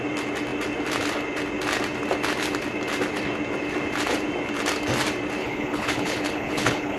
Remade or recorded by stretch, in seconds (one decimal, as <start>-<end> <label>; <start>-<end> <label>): 0.0-5.4 recorded; 5.4-7.0 remade